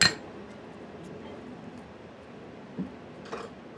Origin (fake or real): real